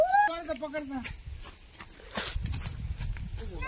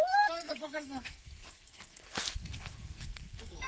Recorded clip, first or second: first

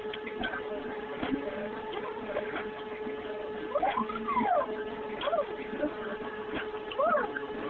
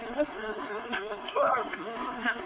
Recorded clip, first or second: first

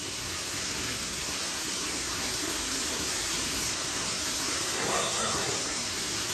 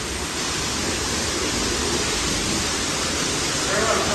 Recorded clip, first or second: second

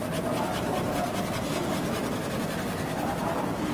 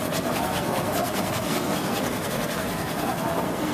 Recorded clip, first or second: first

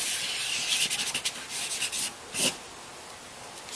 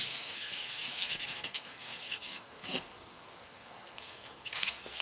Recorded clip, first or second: first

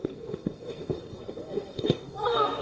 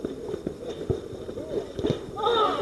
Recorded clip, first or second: second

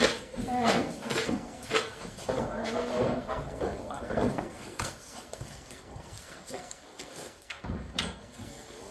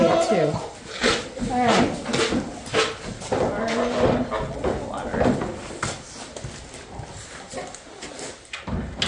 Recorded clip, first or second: second